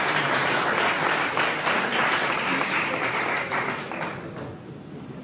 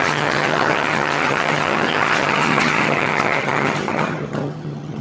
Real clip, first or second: first